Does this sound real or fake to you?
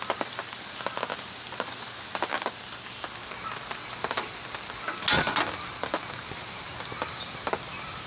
real